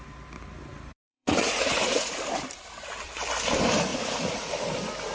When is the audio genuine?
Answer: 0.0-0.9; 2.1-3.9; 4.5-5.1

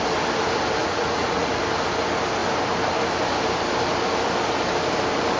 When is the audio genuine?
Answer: 0.0-0.8; 1.6-5.4